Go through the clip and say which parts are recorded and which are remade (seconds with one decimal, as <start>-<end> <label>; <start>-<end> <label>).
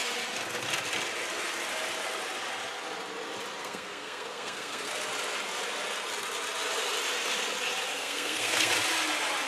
0.0-3.6 recorded; 3.6-4.9 remade; 4.9-7.9 recorded; 7.9-8.7 remade; 8.7-9.5 recorded